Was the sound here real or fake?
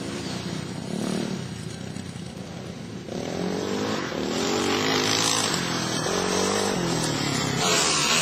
real